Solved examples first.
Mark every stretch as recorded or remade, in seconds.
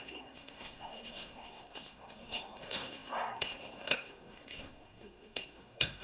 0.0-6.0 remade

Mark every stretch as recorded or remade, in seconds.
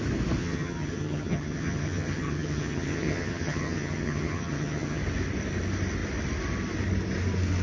0.0-0.4 recorded; 0.4-5.0 remade; 5.0-7.6 recorded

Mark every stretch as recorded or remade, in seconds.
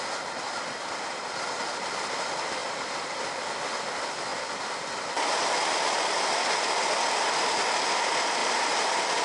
0.0-4.3 recorded; 4.3-5.1 remade; 5.1-8.4 recorded; 8.4-9.2 remade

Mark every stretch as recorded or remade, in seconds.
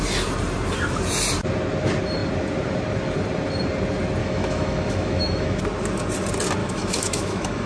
0.0-4.2 recorded; 4.2-5.6 remade; 5.6-6.6 recorded; 6.6-7.7 remade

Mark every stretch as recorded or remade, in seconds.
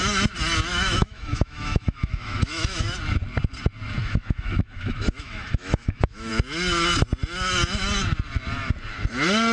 0.0-0.7 recorded; 0.7-2.9 remade; 2.9-4.0 recorded; 4.0-6.3 remade; 6.3-9.5 recorded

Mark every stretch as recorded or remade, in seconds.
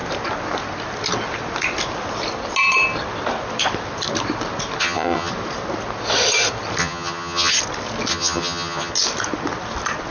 0.0-4.8 recorded; 4.8-5.3 remade; 5.3-6.8 recorded; 6.8-7.5 remade; 7.5-8.1 recorded; 8.1-8.9 remade; 8.9-10.1 recorded